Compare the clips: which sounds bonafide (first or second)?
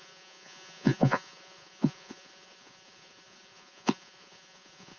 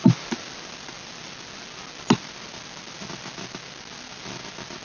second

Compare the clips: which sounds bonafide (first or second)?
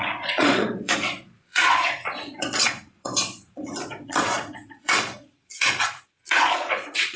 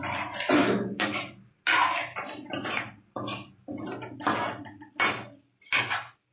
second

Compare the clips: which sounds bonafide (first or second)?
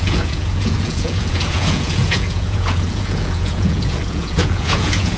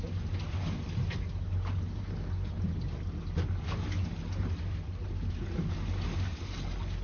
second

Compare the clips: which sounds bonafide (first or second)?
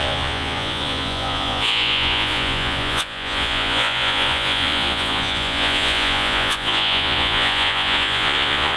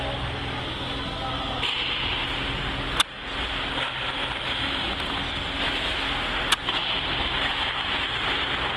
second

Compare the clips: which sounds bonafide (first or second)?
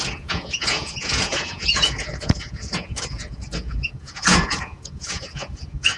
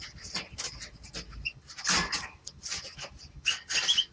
second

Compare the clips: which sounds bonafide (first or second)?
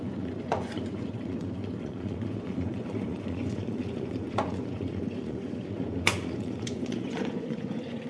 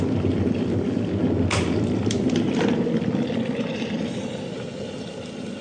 second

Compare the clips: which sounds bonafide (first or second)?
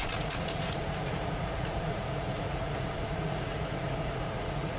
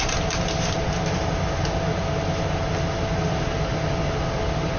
second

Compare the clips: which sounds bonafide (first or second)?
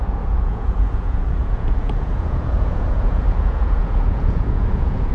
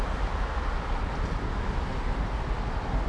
second